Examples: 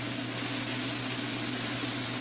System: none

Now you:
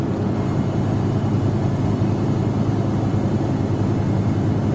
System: none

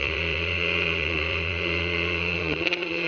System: vocoder, Vocos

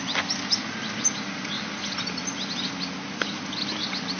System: none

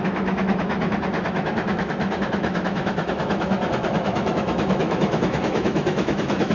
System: autoencoder, DAC-VAE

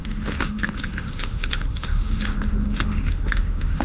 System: autoencoder, DAC-VAE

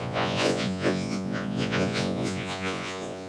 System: vocoder, Vocos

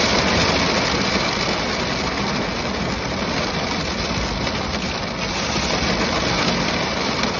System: none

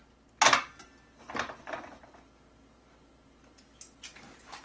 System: none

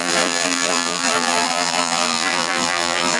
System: vocoder, BigVGAN v2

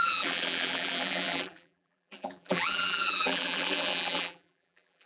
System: vocoder, BigVGAN v2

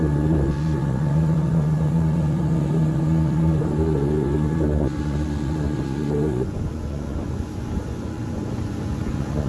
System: vocoder, Vocos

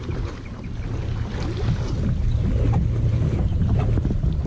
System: none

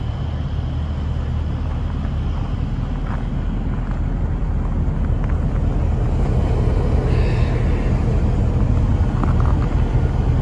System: none